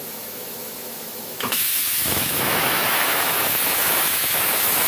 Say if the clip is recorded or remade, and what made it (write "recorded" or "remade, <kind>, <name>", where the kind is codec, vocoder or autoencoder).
remade, autoencoder, DAC-VAE